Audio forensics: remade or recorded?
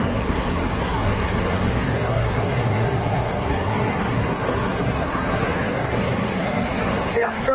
remade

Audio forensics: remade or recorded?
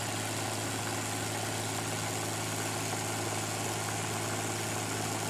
recorded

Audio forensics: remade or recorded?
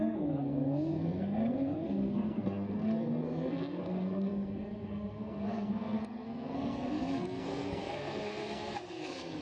remade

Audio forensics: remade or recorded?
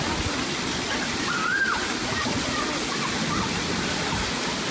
recorded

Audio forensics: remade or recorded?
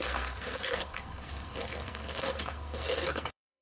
remade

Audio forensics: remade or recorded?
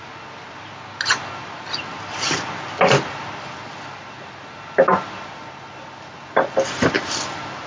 recorded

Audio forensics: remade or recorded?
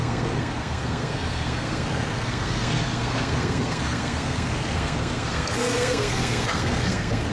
remade